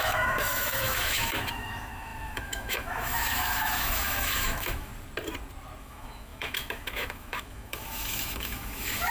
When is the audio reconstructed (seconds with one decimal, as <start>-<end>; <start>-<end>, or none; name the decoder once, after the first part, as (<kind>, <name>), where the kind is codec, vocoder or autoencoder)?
0.0-4.9 (autoencoder, DAC-VAE); 5.8-9.1